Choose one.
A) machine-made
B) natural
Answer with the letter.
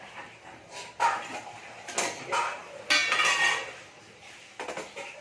B